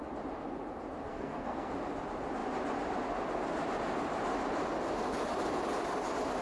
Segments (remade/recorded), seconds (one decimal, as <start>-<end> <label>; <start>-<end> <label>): 0.0-1.1 recorded; 1.1-1.7 remade; 1.7-6.4 recorded